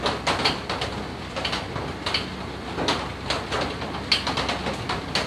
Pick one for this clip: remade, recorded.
recorded